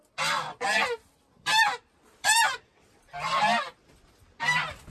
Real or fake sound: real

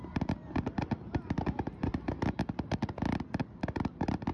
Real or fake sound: real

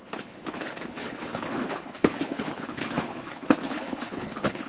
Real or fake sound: fake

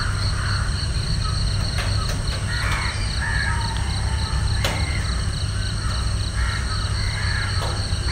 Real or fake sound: real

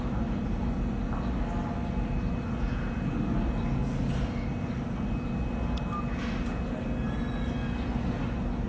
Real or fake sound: real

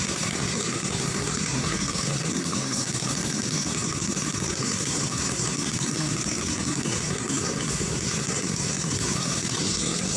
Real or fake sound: fake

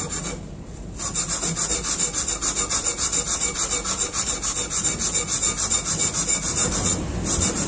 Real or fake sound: real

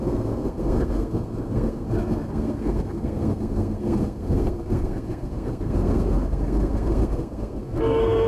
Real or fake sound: fake